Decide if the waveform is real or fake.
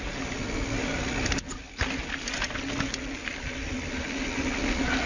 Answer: real